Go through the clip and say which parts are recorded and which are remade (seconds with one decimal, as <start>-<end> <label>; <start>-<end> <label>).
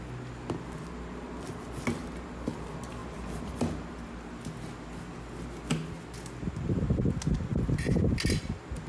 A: 0.0-8.9 recorded